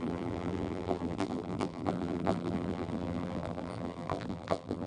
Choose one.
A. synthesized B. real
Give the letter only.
A